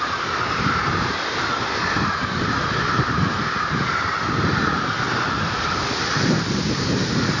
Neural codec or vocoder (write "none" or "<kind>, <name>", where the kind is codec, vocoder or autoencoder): vocoder, BigVGAN v2